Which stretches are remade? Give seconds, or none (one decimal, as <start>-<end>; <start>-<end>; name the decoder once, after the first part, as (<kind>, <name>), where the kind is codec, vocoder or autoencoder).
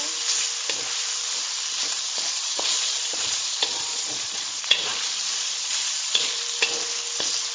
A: 1.9-6.4 (vocoder, Vocos)